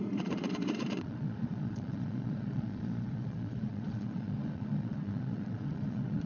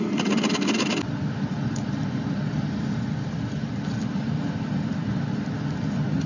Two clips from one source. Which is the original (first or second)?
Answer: second